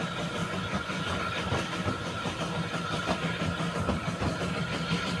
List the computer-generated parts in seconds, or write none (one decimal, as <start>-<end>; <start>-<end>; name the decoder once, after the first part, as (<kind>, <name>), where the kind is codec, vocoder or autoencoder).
0.4-1.2 (vocoder, Vocos)